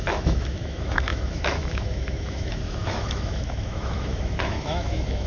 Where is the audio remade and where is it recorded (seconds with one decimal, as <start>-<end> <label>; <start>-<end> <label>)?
0.0-5.3 remade